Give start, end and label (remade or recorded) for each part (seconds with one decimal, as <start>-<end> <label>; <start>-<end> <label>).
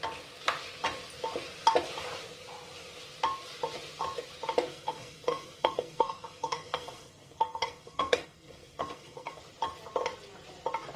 0.0-4.7 recorded; 4.7-9.4 remade; 9.4-11.0 recorded